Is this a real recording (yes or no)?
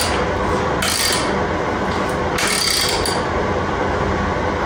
yes